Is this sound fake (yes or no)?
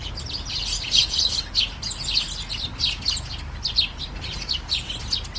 no